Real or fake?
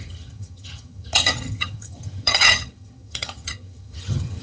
fake